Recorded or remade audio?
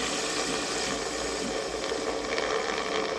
recorded